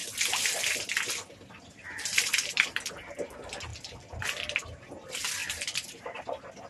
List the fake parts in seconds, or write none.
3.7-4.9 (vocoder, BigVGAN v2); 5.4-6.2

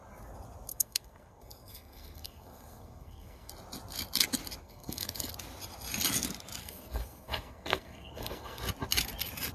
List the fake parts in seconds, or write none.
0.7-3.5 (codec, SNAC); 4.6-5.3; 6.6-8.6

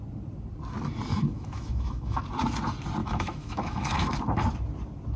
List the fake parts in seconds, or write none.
1.1-2.2 (autoencoder, DAC-VAE); 3.0-4.1

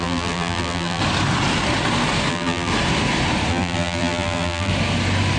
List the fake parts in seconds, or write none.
0.0-1.0 (vocoder, BigVGAN v2); 2.3-2.7; 3.5-4.7

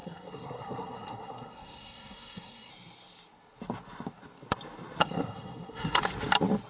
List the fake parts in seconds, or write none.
0.0-2.7 (codec, SNAC); 5.0-6.0

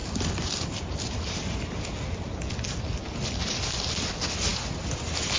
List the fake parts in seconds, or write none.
none

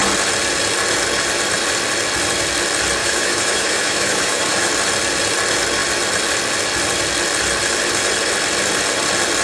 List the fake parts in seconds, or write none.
3.0-4.7 (autoencoder, DAC-VAE)

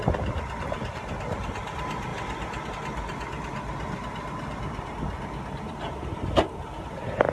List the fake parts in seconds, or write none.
2.1-2.7 (vocoder, BigVGAN v2)